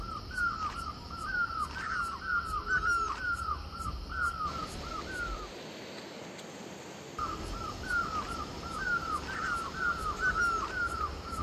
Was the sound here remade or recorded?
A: recorded